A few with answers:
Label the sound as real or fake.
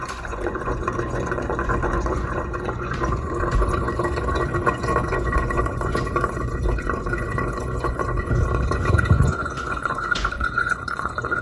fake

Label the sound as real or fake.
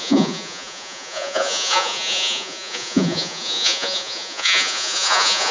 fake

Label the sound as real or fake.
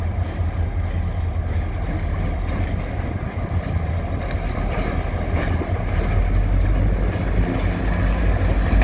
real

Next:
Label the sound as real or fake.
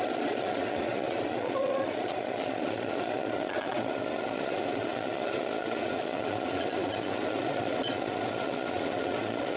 fake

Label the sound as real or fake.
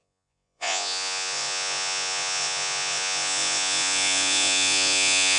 fake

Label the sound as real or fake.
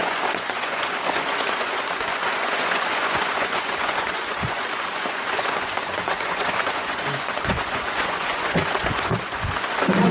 fake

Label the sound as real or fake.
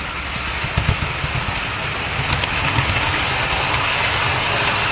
real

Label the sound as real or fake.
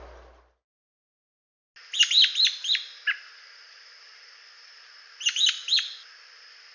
real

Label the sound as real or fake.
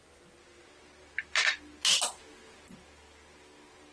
real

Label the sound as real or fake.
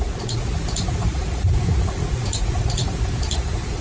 fake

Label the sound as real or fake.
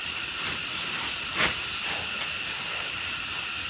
real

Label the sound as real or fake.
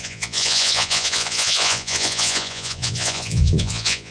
fake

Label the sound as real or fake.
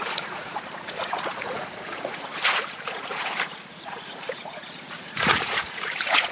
fake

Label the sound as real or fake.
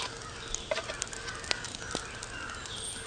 real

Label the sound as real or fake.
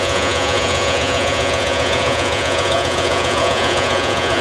fake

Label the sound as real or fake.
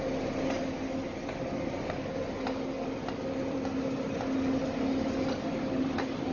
real